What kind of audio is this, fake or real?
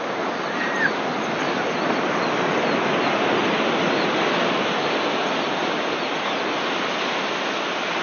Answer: real